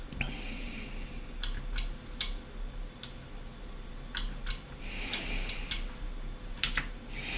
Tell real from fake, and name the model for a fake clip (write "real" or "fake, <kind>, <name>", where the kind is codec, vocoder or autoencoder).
real